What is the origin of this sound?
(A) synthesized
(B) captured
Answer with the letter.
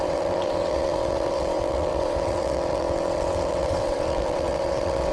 A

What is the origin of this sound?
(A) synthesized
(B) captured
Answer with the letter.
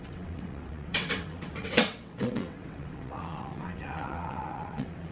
A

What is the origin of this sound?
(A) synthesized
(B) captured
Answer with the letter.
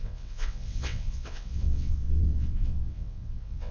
A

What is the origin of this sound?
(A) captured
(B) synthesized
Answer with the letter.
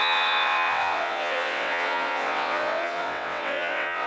B